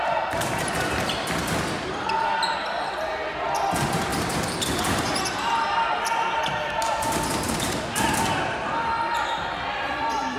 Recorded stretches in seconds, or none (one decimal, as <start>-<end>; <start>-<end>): 0.0-4.1; 8.2-10.4